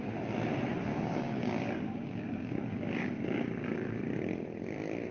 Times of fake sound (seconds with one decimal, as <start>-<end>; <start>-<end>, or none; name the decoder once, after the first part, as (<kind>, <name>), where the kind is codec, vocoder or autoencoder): 0.9-4.0 (codec, DAC)